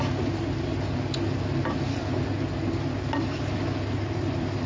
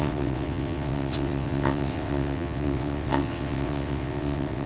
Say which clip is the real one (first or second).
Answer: first